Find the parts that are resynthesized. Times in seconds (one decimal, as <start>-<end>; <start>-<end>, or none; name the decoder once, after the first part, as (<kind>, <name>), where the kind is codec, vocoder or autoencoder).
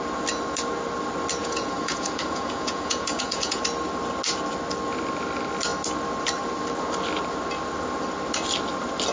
1.4-3.6 (vocoder, Vocos)